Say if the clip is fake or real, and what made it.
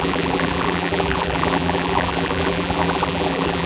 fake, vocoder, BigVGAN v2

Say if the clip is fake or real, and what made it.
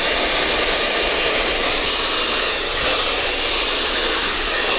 fake, vocoder, BigVGAN v2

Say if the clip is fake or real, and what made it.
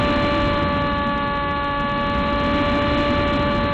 real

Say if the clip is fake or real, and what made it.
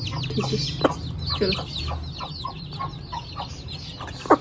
real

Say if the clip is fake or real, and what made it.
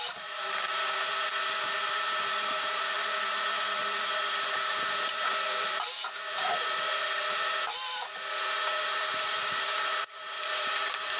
fake, vocoder, BigVGAN v2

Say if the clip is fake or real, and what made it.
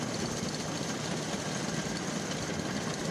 real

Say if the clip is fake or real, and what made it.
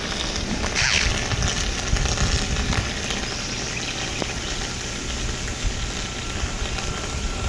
real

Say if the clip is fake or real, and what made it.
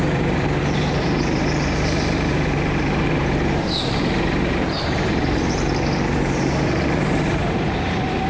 fake, vocoder, BigVGAN v2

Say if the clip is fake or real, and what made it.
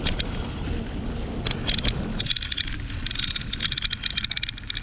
real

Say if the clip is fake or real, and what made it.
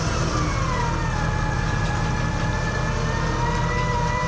fake, vocoder, BigVGAN v2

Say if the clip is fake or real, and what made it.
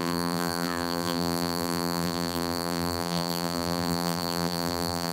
fake, vocoder, BigVGAN v2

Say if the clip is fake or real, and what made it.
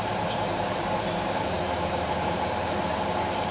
fake, vocoder, BigVGAN v2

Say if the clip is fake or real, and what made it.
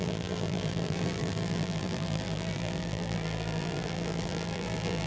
fake, vocoder, BigVGAN v2